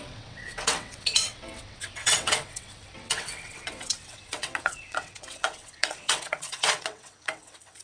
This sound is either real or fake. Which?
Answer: fake